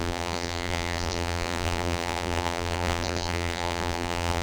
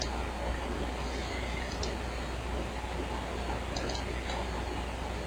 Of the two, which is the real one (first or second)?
second